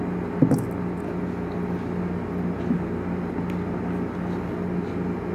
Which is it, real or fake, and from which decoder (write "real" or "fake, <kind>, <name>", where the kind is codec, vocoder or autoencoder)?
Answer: real